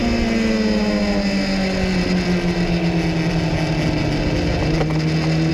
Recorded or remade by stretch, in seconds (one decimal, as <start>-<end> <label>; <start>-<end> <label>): 0.0-5.5 recorded

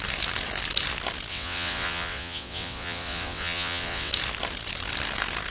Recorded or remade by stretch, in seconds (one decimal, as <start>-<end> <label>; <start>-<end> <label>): 0.0-1.3 recorded; 1.3-4.1 remade; 4.1-5.5 recorded

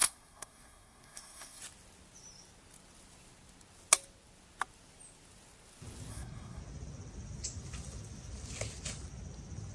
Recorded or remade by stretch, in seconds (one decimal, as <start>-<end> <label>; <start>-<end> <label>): 0.0-1.6 remade; 1.6-6.1 recorded; 6.1-6.6 remade; 6.6-9.7 recorded

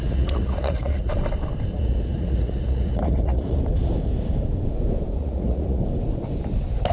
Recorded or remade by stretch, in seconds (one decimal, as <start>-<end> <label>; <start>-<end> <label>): 0.0-1.1 remade; 1.1-1.7 recorded; 1.7-3.6 remade; 3.6-5.2 recorded; 5.2-5.8 remade; 5.8-6.9 recorded

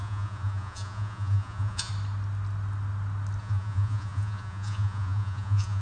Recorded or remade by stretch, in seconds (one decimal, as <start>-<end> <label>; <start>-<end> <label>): 0.0-1.9 remade; 1.9-3.4 recorded; 3.4-5.8 remade

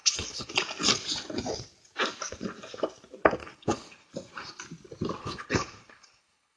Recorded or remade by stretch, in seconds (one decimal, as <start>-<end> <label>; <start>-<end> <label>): 0.0-0.5 remade; 0.5-3.4 recorded; 3.4-4.1 remade; 4.1-5.2 recorded; 5.2-6.6 remade